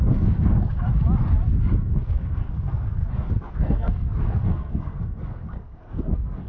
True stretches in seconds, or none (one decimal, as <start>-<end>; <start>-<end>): 0.7-1.8; 3.0-3.5